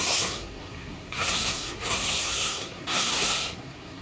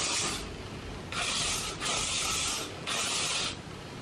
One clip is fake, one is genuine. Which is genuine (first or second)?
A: second